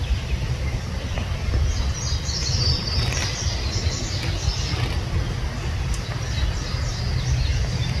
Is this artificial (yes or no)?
no